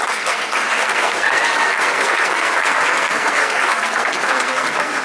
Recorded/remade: remade